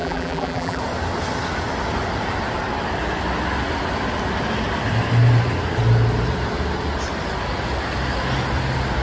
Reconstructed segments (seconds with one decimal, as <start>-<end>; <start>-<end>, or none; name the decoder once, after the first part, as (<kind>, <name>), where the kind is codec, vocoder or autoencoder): 0.0-0.8 (vocoder, BigVGAN v2)